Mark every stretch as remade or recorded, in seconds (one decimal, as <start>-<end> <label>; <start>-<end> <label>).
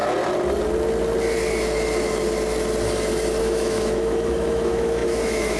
0.0-3.4 recorded; 3.4-5.6 remade